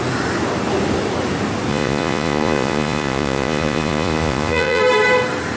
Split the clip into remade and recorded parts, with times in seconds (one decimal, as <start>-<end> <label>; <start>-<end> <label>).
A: 0.0-1.7 recorded; 1.7-4.8 remade; 4.8-5.6 recorded